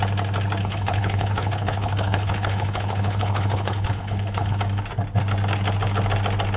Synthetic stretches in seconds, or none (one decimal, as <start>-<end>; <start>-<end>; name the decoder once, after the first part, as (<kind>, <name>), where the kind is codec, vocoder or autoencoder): 0.6-4.6 (codec, HILCodec)